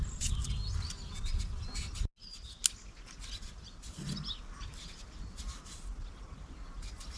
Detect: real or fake real